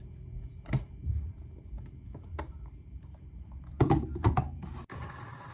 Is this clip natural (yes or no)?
no